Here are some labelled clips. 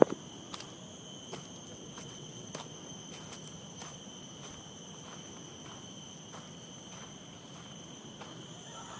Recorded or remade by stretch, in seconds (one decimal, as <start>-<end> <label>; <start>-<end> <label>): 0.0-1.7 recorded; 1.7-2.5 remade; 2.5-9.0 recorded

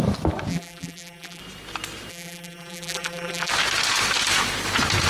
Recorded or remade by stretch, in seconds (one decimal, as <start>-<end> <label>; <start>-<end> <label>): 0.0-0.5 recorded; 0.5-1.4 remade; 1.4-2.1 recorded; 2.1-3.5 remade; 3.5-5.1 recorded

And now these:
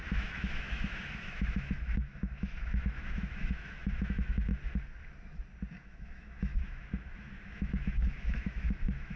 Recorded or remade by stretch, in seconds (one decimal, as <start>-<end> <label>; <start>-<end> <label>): 0.0-4.5 remade; 4.5-5.8 recorded; 5.8-9.2 remade